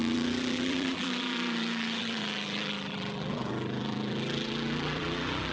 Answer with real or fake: fake